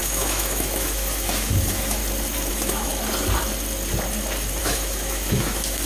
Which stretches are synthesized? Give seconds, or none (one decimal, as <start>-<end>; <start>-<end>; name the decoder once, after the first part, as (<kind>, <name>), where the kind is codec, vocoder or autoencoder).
0.0-2.0 (autoencoder, DAC-VAE); 2.5-2.9; 4.6-5.9